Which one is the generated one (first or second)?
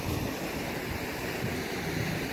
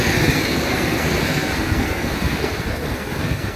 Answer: second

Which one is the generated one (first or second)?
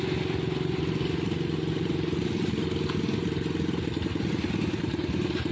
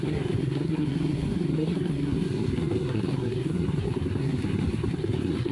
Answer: second